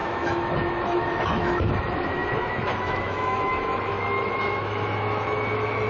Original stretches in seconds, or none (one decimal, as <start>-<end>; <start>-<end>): none